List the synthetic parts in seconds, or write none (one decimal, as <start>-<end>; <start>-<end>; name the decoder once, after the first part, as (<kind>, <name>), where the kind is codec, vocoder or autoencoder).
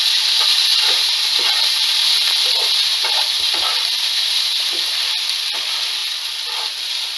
0.7-5.0 (vocoder, BigVGAN v2)